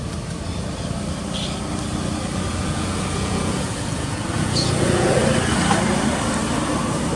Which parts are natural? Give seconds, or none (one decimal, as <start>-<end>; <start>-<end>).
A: 0.0-2.5; 5.2-7.2